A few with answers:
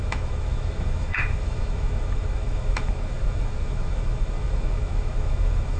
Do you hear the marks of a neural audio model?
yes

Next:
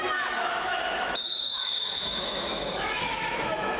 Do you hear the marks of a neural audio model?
yes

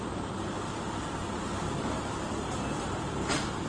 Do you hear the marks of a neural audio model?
yes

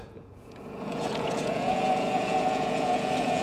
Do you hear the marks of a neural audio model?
yes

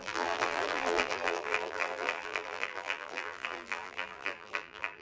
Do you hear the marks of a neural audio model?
yes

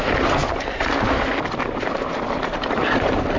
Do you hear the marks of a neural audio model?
yes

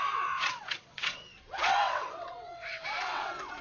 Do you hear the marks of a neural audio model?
yes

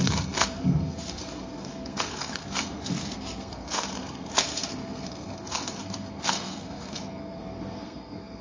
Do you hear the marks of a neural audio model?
yes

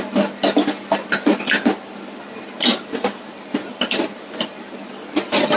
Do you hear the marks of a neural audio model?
no